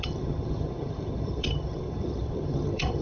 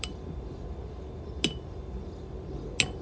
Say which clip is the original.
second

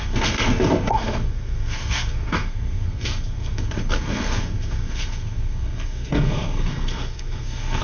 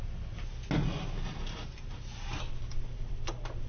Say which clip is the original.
second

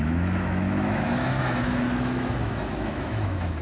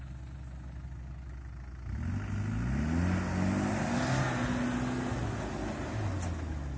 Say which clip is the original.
second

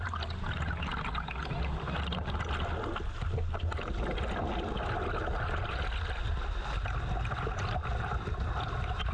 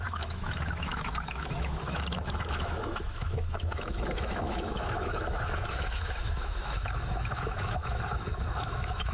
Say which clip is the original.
first